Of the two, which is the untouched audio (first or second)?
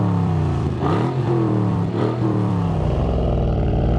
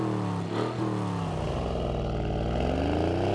second